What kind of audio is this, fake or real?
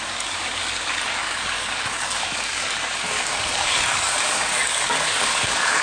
fake